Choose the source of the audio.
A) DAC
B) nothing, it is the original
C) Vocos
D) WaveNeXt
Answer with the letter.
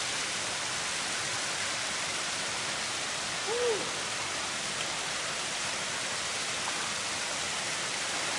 B